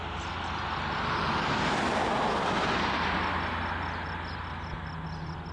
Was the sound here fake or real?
real